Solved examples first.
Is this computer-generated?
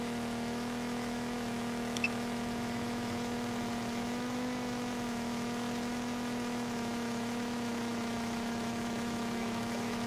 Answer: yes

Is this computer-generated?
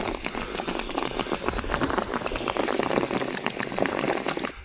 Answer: no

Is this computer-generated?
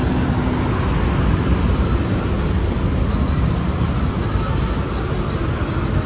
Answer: no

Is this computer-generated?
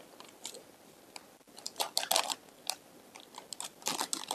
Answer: no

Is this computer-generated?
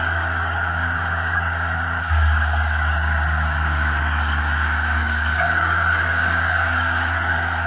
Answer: yes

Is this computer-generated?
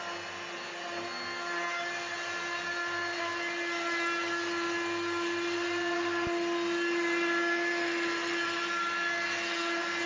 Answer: no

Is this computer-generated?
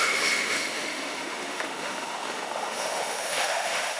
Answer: yes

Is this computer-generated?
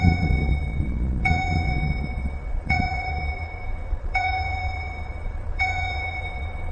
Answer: yes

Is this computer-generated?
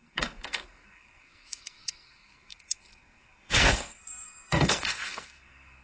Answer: yes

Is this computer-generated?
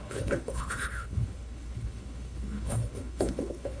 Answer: yes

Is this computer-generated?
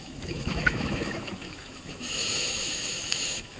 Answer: yes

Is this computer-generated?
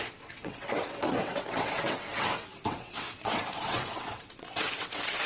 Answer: yes